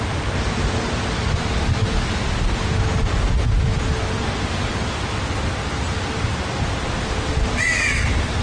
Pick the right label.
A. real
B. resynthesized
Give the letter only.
A